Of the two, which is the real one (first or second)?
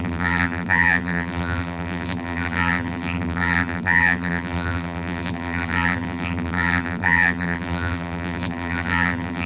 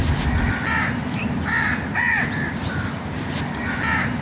second